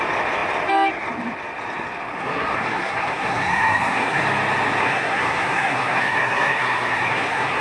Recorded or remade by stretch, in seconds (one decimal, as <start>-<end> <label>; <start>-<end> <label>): 0.0-2.1 recorded; 2.1-4.2 remade; 4.2-4.8 recorded; 4.8-7.6 remade